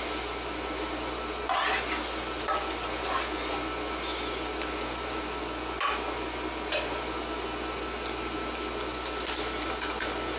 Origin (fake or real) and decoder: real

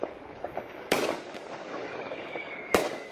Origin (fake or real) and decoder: fake, codec, DAC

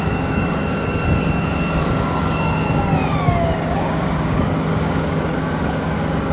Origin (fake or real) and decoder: fake, codec, DAC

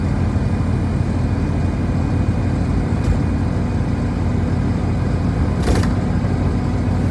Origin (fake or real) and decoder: real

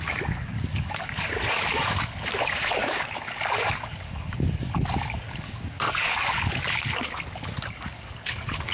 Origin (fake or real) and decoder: fake, codec, DAC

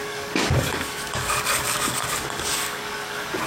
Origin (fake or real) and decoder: fake, codec, DAC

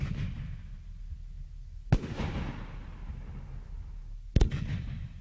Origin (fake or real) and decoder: real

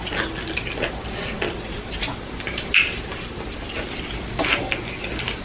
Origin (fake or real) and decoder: real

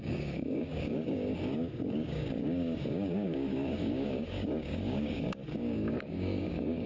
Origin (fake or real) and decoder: fake, codec, DAC